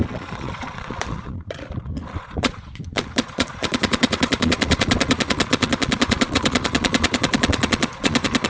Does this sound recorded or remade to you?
remade